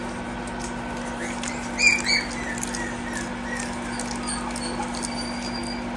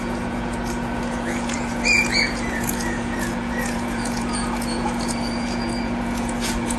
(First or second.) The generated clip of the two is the second